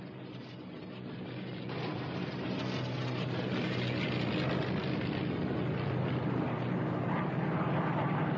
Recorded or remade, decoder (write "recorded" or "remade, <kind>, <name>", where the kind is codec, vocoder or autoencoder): recorded